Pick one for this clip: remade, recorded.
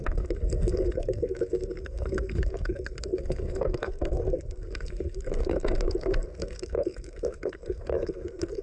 remade